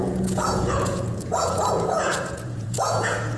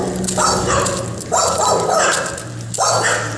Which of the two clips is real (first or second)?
second